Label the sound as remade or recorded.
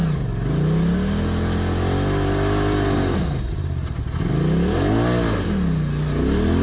recorded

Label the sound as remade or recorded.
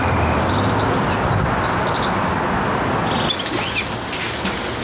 recorded